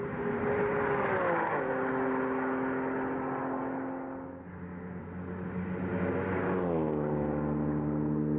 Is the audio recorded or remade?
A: recorded